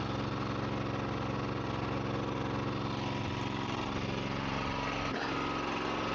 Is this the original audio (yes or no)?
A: yes